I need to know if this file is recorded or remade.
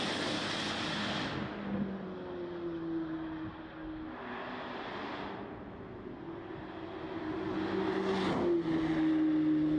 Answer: recorded